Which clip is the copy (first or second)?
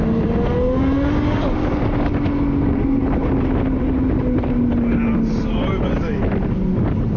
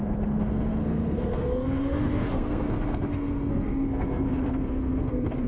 second